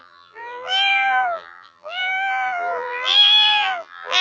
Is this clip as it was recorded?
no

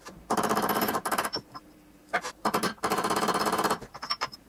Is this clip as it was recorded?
no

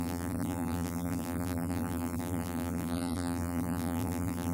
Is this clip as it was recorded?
no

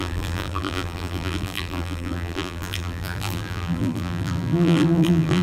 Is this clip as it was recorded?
no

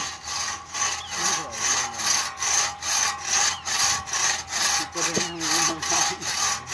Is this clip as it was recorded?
yes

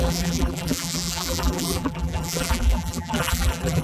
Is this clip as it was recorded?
no